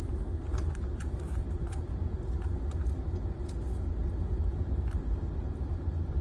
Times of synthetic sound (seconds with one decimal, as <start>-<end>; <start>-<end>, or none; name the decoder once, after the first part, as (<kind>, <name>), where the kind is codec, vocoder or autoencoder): none